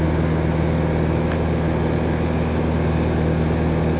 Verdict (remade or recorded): recorded